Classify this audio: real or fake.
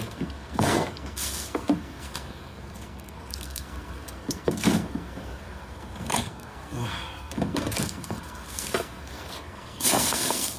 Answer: fake